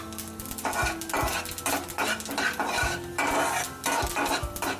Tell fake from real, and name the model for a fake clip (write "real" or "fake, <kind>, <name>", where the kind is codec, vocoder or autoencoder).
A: real